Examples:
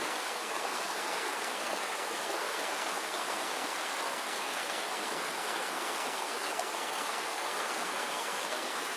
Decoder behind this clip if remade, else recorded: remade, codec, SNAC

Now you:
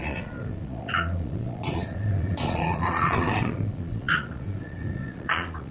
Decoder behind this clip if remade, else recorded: remade, vocoder, Vocos